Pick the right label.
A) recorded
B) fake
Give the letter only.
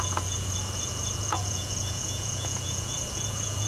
B